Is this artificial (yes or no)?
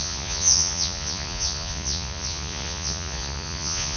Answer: yes